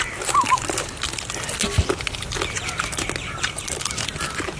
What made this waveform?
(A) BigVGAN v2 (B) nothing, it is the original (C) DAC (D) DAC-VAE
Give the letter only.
B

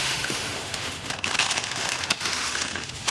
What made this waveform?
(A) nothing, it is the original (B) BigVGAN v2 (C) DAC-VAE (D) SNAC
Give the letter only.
C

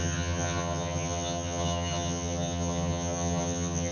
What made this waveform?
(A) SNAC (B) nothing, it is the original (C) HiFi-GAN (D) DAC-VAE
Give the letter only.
C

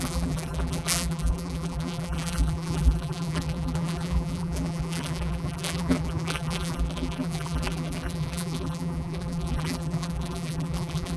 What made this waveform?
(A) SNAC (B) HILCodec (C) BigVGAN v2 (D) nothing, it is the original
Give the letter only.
C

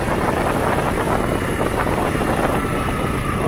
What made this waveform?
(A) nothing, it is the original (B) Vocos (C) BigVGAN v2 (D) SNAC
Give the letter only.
A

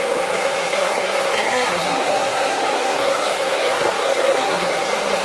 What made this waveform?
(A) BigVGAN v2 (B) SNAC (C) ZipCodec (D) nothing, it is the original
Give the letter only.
B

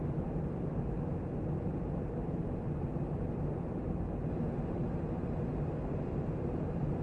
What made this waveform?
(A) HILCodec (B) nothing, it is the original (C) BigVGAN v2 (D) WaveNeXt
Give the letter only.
B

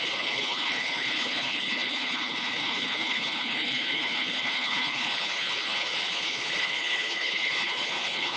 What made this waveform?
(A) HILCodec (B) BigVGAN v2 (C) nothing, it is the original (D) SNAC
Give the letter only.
A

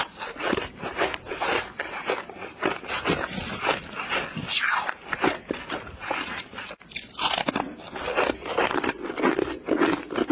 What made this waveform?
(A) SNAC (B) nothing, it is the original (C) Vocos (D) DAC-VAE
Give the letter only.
B